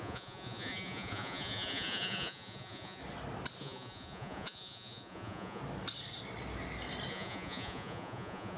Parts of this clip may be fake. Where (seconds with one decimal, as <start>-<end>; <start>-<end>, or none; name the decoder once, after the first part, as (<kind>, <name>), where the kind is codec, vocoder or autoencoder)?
0.0-3.0 (vocoder, Vocos); 3.6-5.6; 7.1-8.6